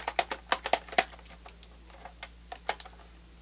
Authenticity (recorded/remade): recorded